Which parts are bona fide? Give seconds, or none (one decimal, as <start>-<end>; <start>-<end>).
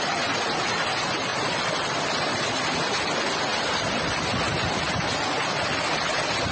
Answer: 0.0-1.3; 2.6-3.5; 4.5-6.5